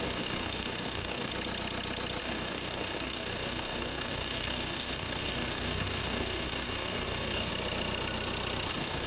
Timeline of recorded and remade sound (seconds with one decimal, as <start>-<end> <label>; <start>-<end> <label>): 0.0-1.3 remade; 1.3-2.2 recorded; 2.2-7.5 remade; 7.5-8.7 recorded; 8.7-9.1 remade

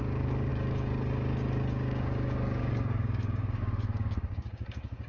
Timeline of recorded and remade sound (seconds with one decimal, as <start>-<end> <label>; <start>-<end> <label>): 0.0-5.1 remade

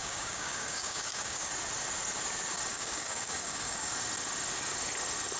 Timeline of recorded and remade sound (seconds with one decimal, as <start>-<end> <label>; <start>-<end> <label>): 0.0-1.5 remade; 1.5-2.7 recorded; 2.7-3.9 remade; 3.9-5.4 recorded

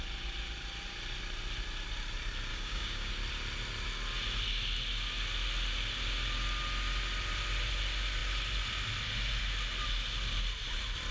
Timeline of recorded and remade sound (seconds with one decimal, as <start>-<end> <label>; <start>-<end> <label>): 0.0-2.5 recorded; 2.5-3.1 remade; 3.1-11.1 recorded

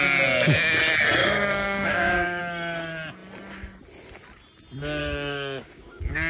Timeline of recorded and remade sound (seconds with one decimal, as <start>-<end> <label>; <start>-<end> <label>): 0.0-1.2 recorded; 1.2-2.4 remade; 2.4-5.0 recorded; 5.0-6.3 remade